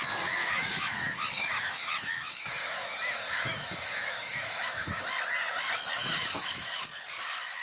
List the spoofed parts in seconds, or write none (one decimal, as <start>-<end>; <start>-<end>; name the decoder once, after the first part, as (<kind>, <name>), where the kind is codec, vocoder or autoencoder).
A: 0.4-5.0 (autoencoder, DAC-VAE); 6.0-6.8